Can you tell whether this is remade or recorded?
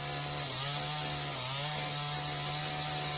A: recorded